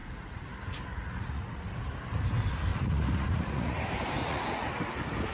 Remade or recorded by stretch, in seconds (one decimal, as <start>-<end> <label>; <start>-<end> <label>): 0.0-0.5 remade; 0.5-0.9 recorded; 0.9-1.7 remade; 1.7-2.7 recorded; 2.7-3.8 remade; 3.8-4.2 recorded; 4.2-4.7 remade; 4.7-5.3 recorded